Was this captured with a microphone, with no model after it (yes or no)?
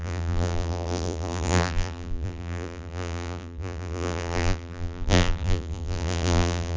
no